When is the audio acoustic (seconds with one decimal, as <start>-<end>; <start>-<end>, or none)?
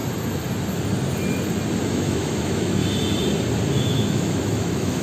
0.0-1.9; 2.8-3.8